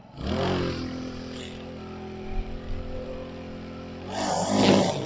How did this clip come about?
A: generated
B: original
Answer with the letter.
B